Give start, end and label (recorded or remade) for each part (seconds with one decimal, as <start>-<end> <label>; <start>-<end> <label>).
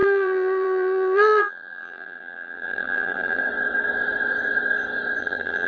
0.0-3.4 remade; 3.4-5.2 recorded; 5.2-5.7 remade